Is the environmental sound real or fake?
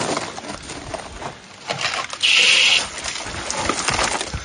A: real